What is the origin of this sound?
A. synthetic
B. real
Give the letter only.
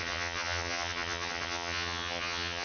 A